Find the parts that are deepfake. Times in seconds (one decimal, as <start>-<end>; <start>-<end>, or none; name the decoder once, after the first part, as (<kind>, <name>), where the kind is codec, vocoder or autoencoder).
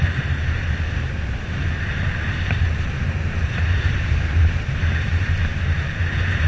0.0-6.5 (vocoder, BigVGAN v2)